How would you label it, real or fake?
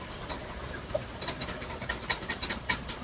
real